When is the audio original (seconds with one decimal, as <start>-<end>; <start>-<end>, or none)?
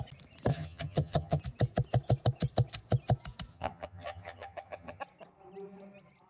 0.0-0.5; 1.4-3.5; 5.0-6.3